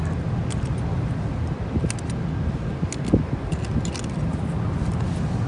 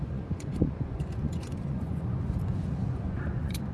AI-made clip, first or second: second